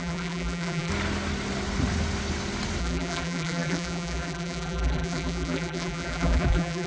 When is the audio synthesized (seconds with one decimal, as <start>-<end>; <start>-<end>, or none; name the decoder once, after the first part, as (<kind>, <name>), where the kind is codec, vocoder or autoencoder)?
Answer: 0.0-0.9 (vocoder, BigVGAN v2); 2.8-6.9